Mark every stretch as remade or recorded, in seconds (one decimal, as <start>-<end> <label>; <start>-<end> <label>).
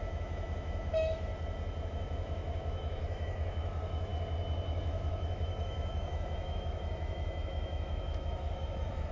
0.0-1.3 remade; 1.3-1.9 recorded; 1.9-4.1 remade; 4.1-4.8 recorded; 4.8-9.1 remade